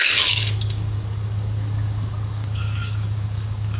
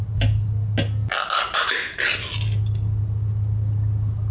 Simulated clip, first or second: first